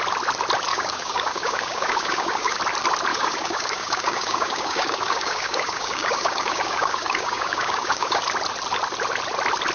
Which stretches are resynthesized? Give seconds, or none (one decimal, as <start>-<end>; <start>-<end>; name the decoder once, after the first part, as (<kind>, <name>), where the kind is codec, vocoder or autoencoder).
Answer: 0.7-2.6 (codec, DAC); 3.1-8.2